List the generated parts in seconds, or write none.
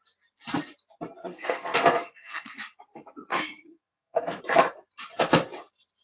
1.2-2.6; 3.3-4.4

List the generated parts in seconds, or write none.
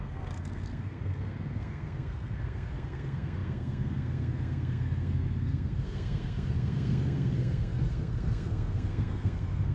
0.0-9.7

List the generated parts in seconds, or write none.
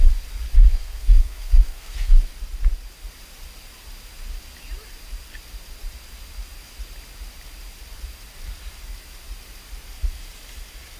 0.6-2.2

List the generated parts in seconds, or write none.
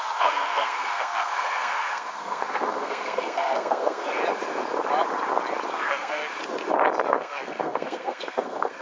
0.0-4.2; 5.7-6.2; 7.1-8.8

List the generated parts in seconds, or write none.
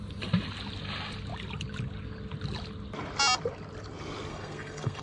4.3-5.0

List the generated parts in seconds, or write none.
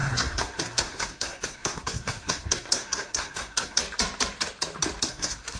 0.0-3.8; 5.1-5.6